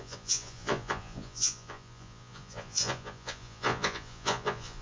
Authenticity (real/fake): fake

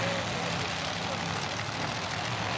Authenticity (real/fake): real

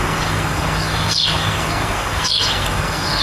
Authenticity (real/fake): fake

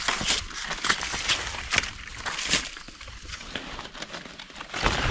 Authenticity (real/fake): real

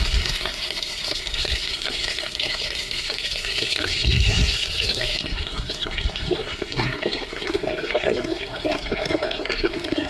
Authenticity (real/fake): fake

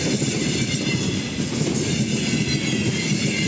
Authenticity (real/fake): real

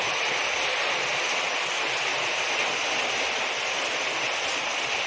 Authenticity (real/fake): real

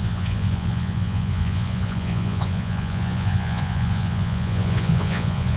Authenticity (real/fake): fake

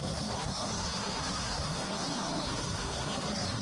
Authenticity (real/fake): fake